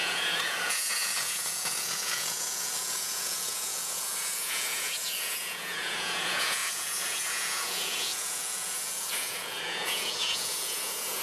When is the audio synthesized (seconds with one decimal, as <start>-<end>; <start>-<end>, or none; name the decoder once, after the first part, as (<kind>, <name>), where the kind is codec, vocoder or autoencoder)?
0.0-11.2 (vocoder, Vocos)